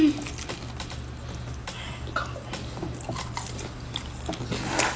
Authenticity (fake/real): real